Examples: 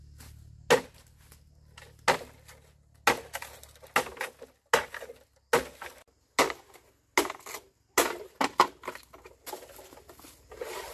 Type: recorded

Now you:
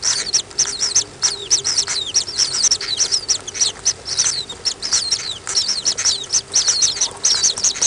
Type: recorded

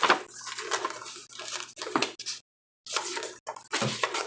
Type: recorded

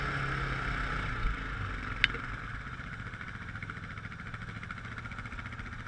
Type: recorded